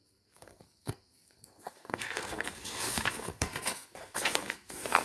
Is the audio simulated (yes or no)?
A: yes